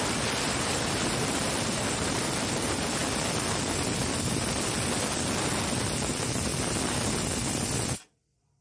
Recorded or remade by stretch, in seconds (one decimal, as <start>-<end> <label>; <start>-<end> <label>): 0.0-3.0 remade; 3.0-5.5 recorded; 5.5-6.5 remade; 6.5-8.2 recorded; 8.2-8.6 remade